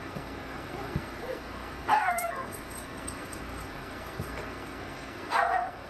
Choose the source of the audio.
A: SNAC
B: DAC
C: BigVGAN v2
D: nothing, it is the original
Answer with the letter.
A